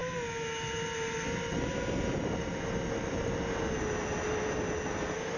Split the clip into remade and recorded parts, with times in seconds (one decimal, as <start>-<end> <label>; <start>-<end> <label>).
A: 0.0-5.4 recorded